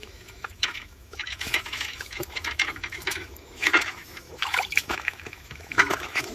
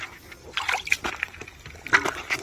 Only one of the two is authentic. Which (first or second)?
second